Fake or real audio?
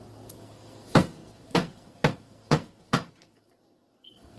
fake